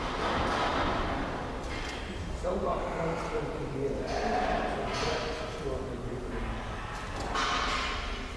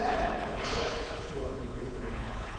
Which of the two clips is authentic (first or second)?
first